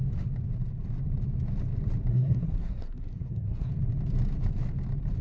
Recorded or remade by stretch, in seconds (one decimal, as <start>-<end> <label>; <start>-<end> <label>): 0.0-2.1 recorded; 2.1-3.7 remade; 3.7-5.2 recorded